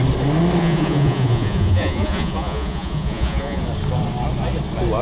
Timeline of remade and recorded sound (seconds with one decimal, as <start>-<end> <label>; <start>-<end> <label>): 0.0-0.6 recorded; 0.6-3.6 remade; 3.6-5.0 recorded